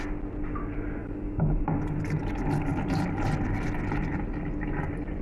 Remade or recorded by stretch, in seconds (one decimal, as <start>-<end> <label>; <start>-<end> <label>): 0.0-1.0 recorded; 1.0-1.6 remade; 1.6-5.2 recorded